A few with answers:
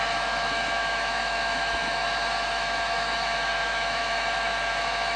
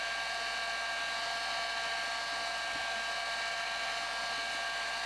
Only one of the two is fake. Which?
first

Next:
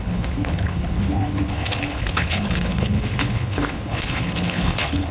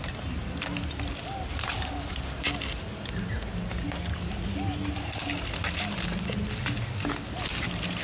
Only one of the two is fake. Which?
first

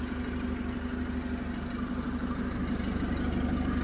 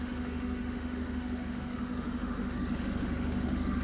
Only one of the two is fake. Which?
second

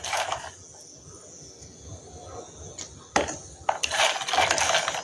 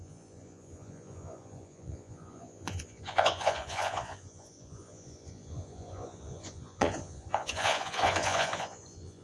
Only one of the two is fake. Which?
second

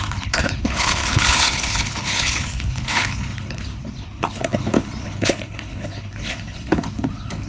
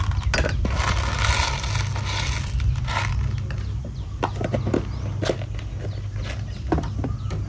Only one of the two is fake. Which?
first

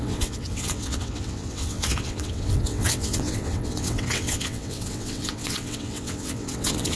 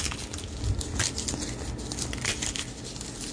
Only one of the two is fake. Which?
first